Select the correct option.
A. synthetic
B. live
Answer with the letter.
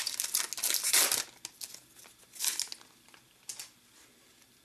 B